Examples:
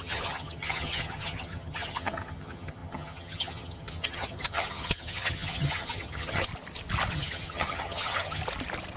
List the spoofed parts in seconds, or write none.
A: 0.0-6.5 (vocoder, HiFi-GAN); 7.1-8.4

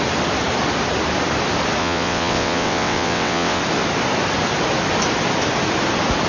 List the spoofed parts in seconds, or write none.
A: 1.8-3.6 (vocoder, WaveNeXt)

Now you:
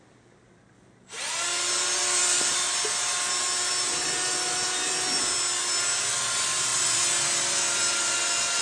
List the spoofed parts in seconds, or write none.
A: none